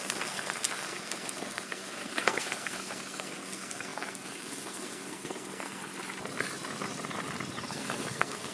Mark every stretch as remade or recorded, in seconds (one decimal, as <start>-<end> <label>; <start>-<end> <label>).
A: 0.0-5.9 remade; 5.9-7.7 recorded; 7.7-8.5 remade